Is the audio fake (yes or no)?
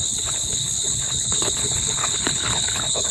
yes